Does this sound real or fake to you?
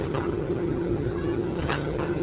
fake